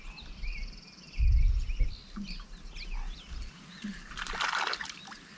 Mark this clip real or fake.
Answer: real